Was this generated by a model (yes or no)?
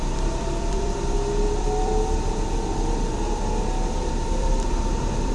yes